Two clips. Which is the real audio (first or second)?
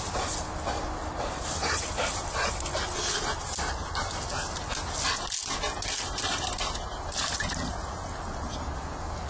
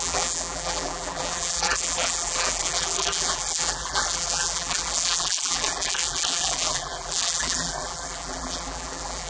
first